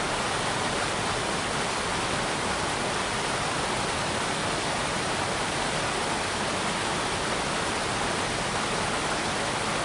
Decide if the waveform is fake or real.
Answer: real